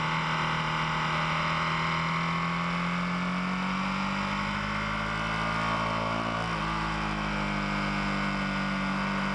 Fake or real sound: real